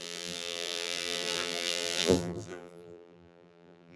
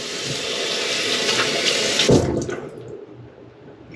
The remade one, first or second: first